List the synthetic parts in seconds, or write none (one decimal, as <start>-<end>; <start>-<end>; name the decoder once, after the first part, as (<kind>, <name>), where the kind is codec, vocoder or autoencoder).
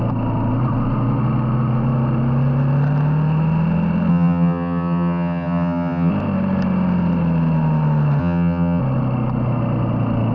4.1-6.1 (vocoder, HiFi-GAN); 8.2-8.8